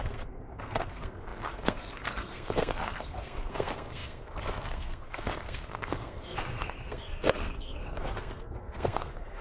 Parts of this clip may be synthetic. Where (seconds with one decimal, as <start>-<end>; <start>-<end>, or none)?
0.0-9.4